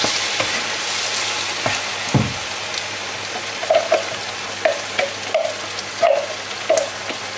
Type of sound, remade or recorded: recorded